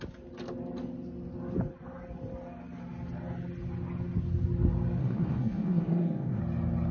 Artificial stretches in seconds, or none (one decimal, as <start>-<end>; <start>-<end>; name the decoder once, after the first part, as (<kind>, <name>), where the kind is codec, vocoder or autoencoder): 5.0-6.4 (codec, SNAC)